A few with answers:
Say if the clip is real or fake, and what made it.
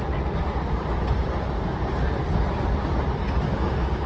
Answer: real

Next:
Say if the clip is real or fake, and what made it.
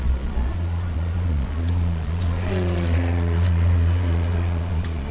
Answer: fake, vocoder, Vocos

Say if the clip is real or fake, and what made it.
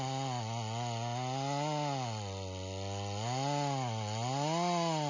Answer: real